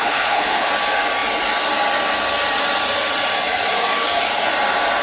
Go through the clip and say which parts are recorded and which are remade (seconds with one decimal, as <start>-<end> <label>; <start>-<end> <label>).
0.0-0.7 remade; 0.7-5.0 recorded